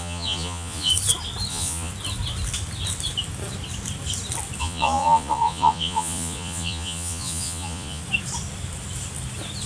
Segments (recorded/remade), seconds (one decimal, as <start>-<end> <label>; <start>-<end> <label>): 0.0-0.9 remade; 0.9-1.5 recorded; 1.5-1.9 remade; 1.9-4.6 recorded; 4.6-8.0 remade; 8.0-9.7 recorded